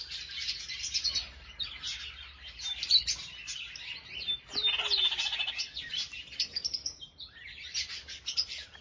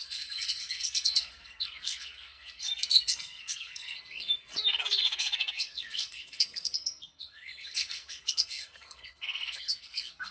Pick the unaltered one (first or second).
first